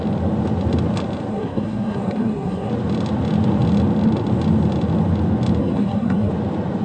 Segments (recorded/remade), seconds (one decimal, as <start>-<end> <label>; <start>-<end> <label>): 0.0-1.3 recorded; 1.3-2.7 remade; 2.7-5.6 recorded; 5.6-6.3 remade; 6.3-6.8 recorded